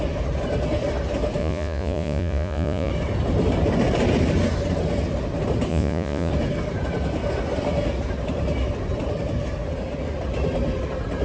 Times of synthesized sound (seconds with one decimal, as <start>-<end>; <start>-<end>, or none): 1.4-2.9; 5.7-6.3